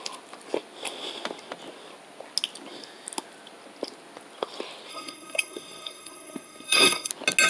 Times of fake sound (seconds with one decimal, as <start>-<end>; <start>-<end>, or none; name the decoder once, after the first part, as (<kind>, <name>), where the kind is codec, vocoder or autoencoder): 4.9-7.1 (codec, SNAC)